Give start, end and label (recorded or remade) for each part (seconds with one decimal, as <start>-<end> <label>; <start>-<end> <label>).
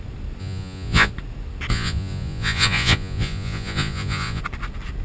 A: 0.0-0.4 recorded; 0.4-1.1 remade; 1.1-1.7 recorded; 1.7-4.4 remade; 4.4-5.0 recorded